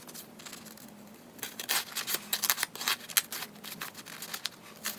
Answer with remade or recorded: recorded